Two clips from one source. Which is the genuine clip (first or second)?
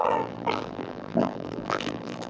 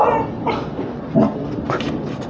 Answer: second